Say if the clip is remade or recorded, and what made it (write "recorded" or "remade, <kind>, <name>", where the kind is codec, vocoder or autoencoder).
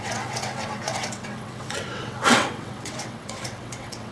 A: remade, vocoder, WaveNeXt